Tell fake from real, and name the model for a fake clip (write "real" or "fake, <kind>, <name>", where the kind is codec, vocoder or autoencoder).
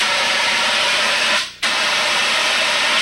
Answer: fake, vocoder, BigVGAN v2